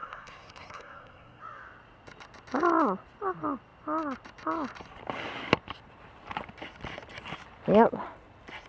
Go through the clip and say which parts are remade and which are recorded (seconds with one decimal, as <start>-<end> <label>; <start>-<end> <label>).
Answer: 0.0-1.4 remade; 1.4-8.7 recorded